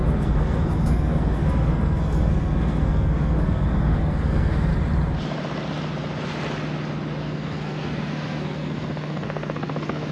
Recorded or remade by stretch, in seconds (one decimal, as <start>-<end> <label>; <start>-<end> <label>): 0.0-4.7 remade; 4.7-7.2 recorded; 7.2-10.1 remade